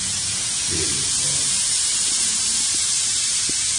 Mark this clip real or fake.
fake